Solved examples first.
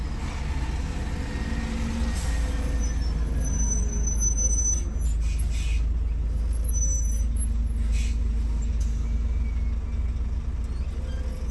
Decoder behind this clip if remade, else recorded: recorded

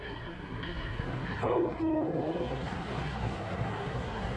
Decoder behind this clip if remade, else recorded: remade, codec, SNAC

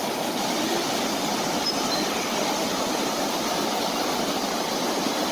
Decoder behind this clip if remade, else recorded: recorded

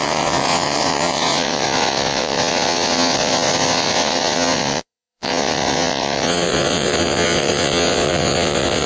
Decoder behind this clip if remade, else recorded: remade, vocoder, WaveNeXt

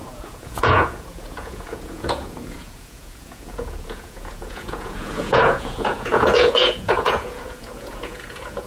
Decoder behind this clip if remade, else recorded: remade, vocoder, Vocos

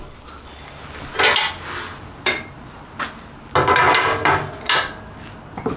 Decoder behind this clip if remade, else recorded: recorded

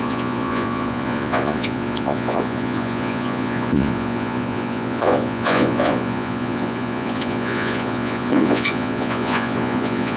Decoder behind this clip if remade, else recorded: remade, vocoder, Vocos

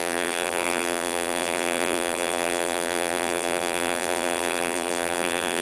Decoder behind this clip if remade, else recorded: remade, vocoder, BigVGAN v2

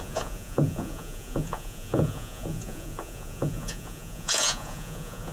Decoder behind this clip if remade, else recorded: remade, vocoder, Vocos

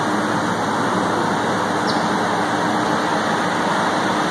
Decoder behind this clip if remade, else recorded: recorded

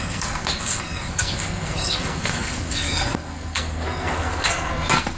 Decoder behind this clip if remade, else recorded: remade, codec, SNAC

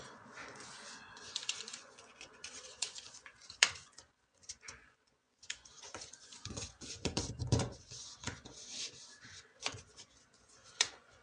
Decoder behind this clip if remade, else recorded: remade, vocoder, Vocos